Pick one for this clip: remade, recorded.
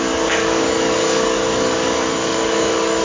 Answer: remade